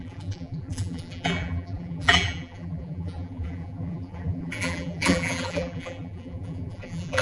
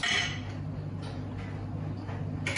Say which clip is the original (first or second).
second